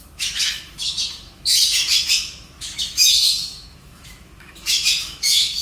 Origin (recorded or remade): remade